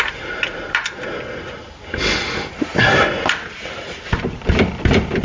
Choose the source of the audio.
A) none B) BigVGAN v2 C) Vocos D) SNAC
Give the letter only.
A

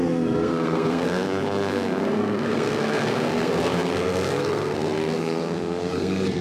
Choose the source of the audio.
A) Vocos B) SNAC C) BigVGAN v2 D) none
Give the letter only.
B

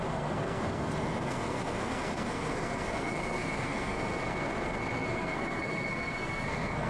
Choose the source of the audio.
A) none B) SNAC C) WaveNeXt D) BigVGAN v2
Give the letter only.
B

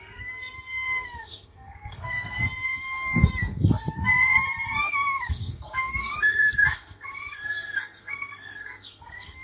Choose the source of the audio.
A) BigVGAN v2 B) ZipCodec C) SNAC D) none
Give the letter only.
C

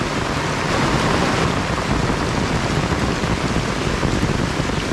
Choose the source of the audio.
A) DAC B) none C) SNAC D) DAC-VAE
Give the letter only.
B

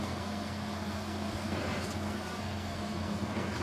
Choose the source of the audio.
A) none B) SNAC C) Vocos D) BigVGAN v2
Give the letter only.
B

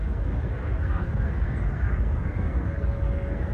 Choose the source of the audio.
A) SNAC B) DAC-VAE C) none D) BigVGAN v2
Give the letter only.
A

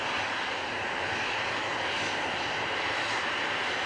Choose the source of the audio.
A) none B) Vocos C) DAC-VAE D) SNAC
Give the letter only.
A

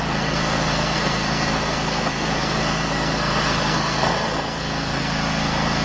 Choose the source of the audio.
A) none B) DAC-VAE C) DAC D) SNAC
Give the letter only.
D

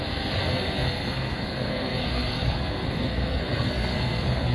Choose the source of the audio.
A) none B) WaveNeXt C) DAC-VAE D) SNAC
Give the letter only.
D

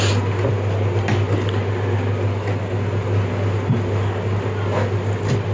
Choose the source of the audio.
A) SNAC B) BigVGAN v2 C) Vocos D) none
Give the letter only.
D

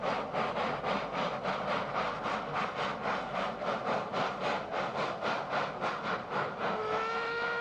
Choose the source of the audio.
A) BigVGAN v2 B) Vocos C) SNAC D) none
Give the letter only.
D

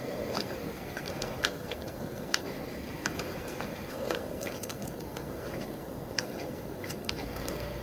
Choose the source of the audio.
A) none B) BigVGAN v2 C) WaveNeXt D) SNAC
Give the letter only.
D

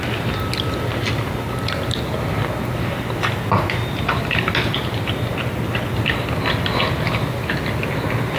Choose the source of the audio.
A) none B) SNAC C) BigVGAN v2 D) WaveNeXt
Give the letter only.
A